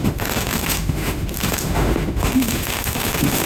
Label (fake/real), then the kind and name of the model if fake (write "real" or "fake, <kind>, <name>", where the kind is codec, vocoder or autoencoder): fake, autoencoder, DAC-VAE